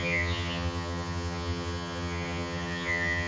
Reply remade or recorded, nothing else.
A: remade